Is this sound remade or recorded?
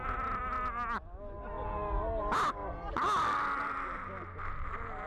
recorded